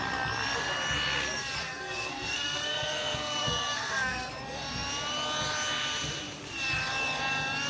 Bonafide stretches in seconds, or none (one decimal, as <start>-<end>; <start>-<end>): 0.0-1.6; 4.3-7.7